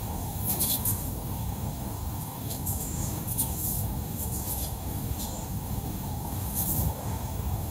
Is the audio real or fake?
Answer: fake